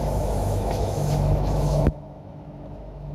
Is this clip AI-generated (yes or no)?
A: yes